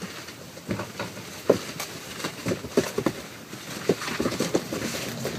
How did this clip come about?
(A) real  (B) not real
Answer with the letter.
A